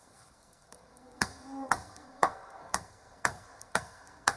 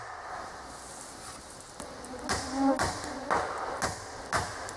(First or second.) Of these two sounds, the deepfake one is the first